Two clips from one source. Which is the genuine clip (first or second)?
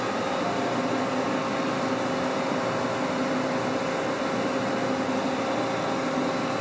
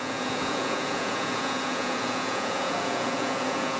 first